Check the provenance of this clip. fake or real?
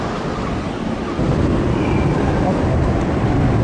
real